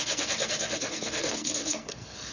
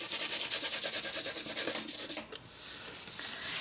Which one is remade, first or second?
first